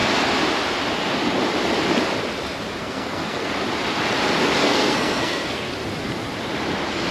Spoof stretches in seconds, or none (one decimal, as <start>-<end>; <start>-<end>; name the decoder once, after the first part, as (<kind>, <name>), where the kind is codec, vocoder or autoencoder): 2.8-3.5 (codec, SNAC); 4.6-5.7